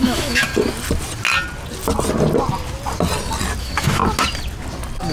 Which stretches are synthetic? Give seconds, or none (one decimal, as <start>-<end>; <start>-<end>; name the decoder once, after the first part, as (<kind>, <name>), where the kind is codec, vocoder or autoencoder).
0.0-0.5 (autoencoder, DAC-VAE); 3.6-4.0